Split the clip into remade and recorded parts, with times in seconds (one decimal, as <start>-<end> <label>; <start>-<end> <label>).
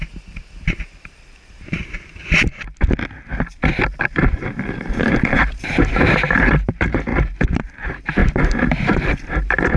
0.0-1.8 remade; 1.8-4.0 recorded; 4.0-8.2 remade; 8.2-8.7 recorded; 8.7-9.8 remade